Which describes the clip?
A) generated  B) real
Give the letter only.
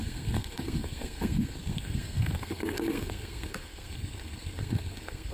A